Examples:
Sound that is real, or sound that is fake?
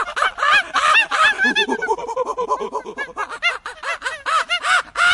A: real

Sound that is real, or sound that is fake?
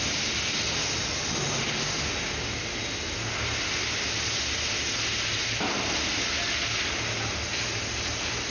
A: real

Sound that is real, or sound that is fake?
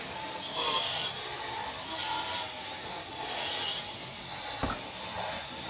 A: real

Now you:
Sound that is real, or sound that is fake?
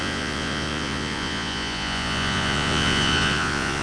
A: fake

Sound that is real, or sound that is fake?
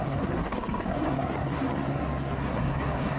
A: fake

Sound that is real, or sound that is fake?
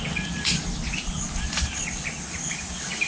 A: real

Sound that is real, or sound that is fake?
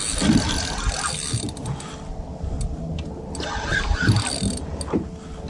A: real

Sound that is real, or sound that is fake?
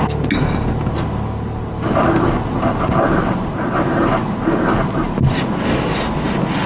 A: real